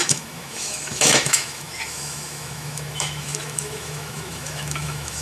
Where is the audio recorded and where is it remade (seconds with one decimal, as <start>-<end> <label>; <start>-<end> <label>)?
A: 0.0-5.2 remade